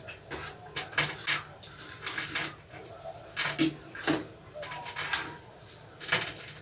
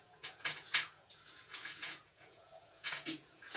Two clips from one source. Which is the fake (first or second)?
second